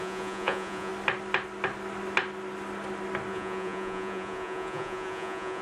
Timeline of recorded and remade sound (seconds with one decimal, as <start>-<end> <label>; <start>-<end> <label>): 0.0-0.9 remade; 0.9-3.3 recorded; 3.3-5.6 remade